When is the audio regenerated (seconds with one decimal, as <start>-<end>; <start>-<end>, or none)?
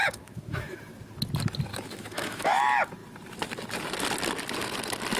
0.0-0.8; 1.7-2.6